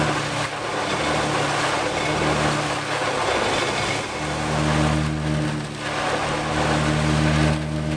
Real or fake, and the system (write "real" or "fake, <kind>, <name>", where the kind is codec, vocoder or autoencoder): real